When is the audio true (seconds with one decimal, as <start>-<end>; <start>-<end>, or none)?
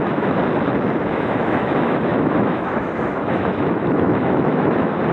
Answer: 0.4-1.1